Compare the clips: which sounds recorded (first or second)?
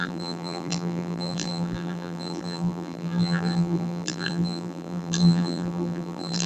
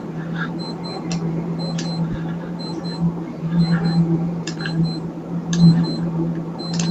second